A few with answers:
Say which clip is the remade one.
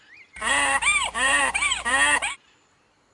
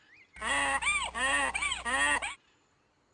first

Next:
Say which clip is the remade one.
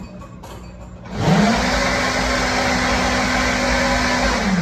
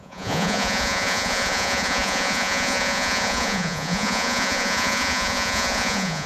second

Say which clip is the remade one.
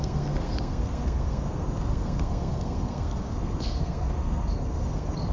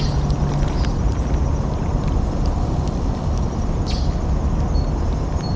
first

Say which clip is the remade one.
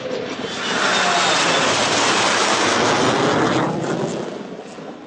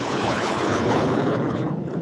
second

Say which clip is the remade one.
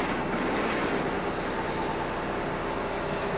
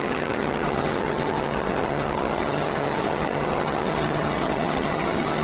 second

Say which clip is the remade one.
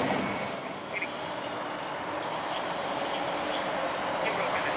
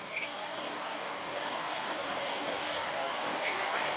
second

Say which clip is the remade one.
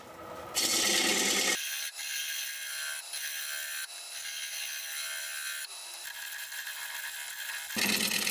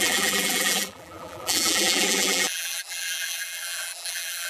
second